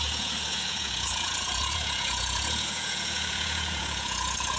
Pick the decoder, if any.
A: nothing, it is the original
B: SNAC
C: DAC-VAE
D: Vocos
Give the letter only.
D